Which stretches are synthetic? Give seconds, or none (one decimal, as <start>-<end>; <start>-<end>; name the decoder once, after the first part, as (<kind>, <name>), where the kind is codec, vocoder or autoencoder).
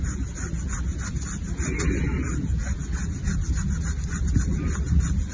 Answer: none